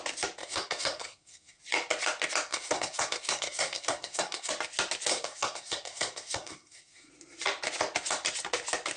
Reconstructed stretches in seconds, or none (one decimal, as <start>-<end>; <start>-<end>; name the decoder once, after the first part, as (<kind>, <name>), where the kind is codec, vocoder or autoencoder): 0.4-1.6 (codec, SNAC); 2.5-4.5; 5.1-7.1